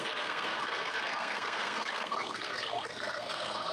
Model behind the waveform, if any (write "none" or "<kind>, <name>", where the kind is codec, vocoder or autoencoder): codec, SNAC